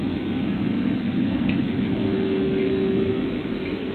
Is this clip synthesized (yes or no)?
yes